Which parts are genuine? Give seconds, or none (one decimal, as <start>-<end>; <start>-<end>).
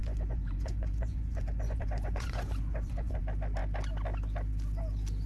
3.2-5.3